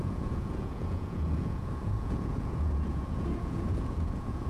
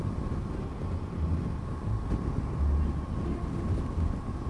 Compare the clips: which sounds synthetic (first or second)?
first